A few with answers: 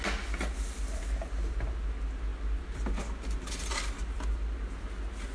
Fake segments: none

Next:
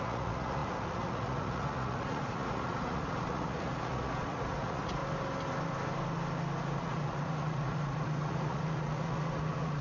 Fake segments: 0.0-5.0 (vocoder, Vocos); 6.8-9.8

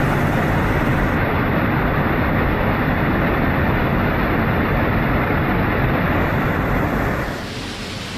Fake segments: none

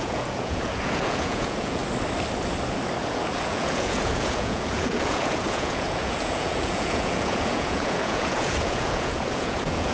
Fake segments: 0.0-1.8 (vocoder, Vocos); 3.0-9.9

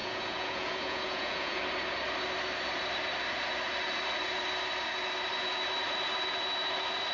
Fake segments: 0.0-1.6 (vocoder, Vocos)